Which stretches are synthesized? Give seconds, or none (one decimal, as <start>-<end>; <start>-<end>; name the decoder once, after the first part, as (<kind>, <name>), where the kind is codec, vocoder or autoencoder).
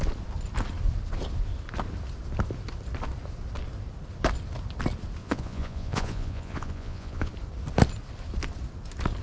5.2-7.3 (vocoder, Vocos)